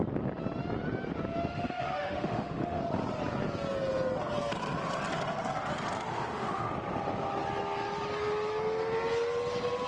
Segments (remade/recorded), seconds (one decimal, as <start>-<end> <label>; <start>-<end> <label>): 0.0-1.5 recorded; 1.5-2.8 remade; 2.8-6.1 recorded; 6.1-6.7 remade; 6.7-9.9 recorded